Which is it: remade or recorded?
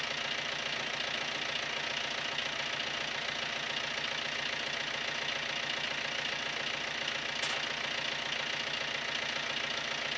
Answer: recorded